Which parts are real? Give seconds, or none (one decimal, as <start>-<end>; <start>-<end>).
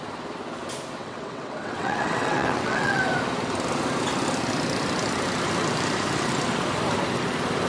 0.0-1.0; 3.0-7.7